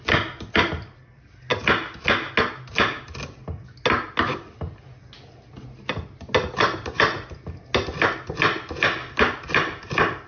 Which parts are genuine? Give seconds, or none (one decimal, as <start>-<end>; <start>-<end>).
0.0-10.3